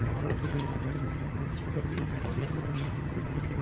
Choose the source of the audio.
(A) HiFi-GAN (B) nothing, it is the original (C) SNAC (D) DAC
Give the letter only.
A